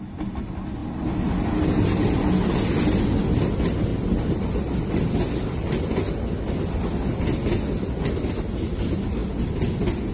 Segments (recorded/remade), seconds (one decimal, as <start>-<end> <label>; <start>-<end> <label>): 0.0-10.1 recorded